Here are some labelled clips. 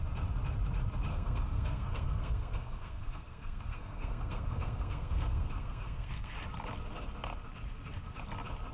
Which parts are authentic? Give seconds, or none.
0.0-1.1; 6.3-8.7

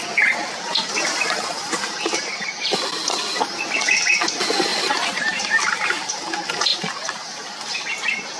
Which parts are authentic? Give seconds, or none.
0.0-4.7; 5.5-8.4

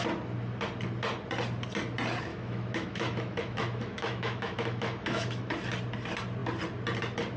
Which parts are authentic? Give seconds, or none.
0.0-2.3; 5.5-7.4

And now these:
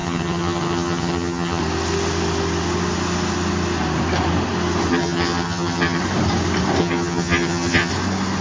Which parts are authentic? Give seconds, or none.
1.6-4.9; 6.0-6.8; 7.9-8.4

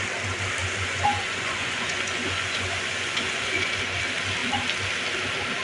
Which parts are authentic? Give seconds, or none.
0.0-0.6; 4.0-5.6